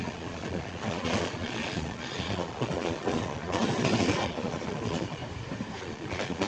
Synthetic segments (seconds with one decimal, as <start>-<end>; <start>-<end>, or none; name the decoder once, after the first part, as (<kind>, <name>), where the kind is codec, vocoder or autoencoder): 0.0-5.2 (vocoder, Vocos); 5.8-6.5